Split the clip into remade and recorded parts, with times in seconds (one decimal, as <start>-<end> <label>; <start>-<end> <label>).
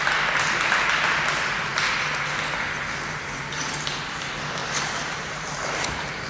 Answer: 0.0-4.6 recorded; 4.6-6.3 remade